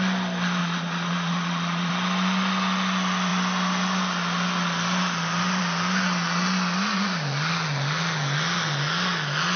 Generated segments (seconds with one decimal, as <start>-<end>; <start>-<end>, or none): 0.6-1.9